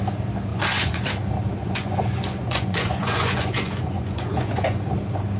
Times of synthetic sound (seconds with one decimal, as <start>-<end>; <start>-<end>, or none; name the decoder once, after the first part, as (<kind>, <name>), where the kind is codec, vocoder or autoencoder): 0.5-1.0 (vocoder, Vocos); 1.6-4.8